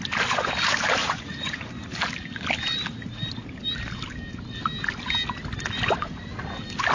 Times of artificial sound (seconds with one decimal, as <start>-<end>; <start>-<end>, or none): 1.0-1.7